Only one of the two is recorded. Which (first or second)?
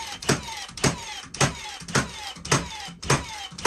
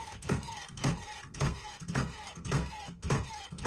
first